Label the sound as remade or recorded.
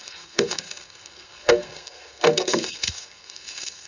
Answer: remade